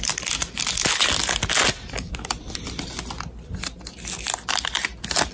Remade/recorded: recorded